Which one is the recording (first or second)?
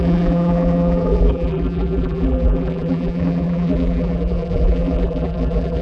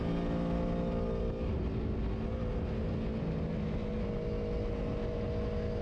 second